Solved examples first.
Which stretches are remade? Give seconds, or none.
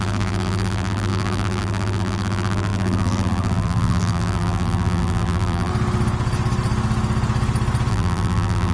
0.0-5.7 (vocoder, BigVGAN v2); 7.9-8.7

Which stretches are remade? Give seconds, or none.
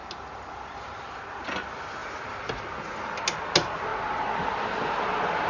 none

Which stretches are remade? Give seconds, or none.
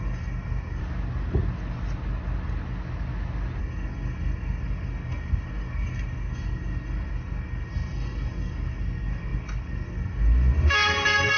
0.0-0.8 (codec, SNAC); 3.6-11.4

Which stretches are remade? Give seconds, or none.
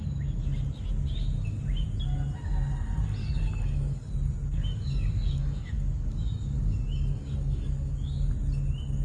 3.2-4.1 (codec, DAC); 4.7-8.3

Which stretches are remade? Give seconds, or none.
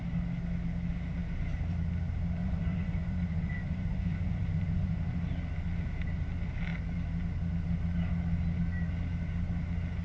2.4-5.0 (vocoder, Vocos)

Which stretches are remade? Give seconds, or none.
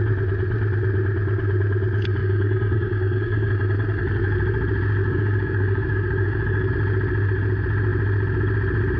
2.2-3.5 (codec, DAC); 5.0-6.7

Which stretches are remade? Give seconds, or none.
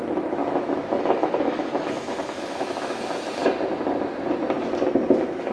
0.0-3.4 (autoencoder, DAC-VAE); 5.1-5.5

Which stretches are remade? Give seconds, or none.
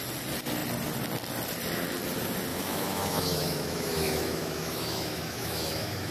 2.5-6.1 (autoencoder, DAC-VAE)